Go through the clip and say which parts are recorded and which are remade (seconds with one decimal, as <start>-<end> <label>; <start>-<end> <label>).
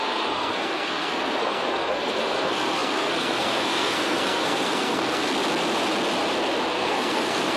0.0-5.3 remade; 5.3-6.7 recorded; 6.7-7.6 remade